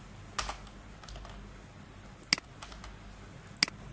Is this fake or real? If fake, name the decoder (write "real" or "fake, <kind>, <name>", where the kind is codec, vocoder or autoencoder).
real